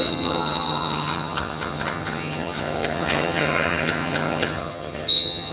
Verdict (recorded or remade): remade